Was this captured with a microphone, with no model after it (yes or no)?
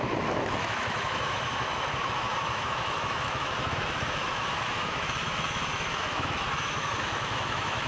no